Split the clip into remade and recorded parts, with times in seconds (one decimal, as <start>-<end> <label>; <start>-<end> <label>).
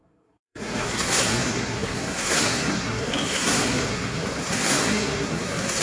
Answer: 0.0-5.8 remade